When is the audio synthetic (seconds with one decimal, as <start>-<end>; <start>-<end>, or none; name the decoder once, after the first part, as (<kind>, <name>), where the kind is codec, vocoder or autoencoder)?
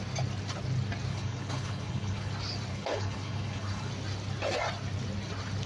1.1-2.3 (codec, HILCodec); 2.7-3.9